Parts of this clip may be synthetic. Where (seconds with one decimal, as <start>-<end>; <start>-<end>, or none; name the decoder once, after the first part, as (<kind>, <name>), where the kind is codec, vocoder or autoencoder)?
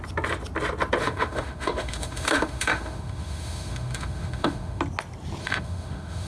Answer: 1.0-4.8 (autoencoder, DAC-VAE); 5.4-6.3